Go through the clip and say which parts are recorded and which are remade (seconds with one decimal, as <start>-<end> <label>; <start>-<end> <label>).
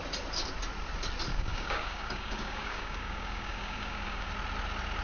0.0-1.3 recorded; 1.3-4.3 remade; 4.3-5.0 recorded